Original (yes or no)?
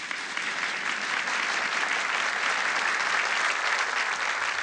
yes